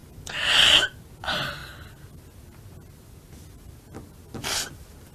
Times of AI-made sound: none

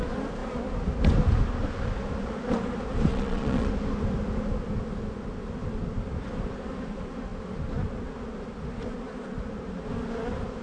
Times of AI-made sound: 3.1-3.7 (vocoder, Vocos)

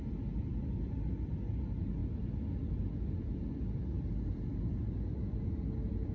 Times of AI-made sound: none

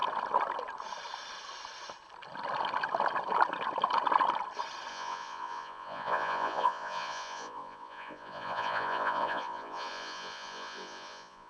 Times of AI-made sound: 4.9-11.5 (vocoder, Vocos)

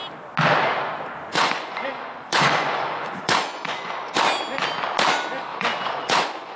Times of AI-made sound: 1.3-4.2 (vocoder, Vocos); 5.5-6.6

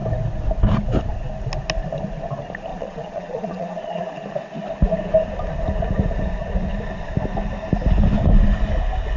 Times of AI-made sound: 2.7-4.1 (vocoder, Vocos)

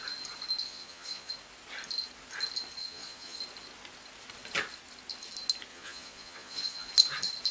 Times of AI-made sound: 0.6-1.3 (vocoder, Vocos); 2.8-3.4; 5.7-6.9